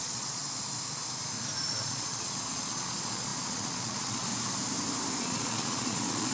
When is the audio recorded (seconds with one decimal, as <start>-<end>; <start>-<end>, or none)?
0.4-1.8; 4.3-5.2